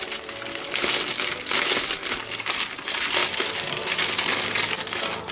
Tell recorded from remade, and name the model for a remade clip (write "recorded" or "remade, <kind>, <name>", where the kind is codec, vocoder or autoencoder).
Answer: recorded